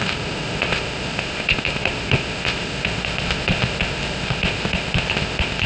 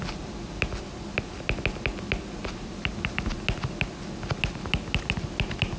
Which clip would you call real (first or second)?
second